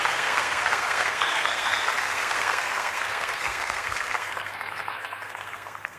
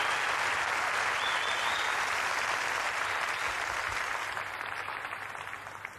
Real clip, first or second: second